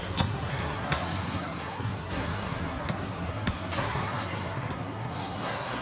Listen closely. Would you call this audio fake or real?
fake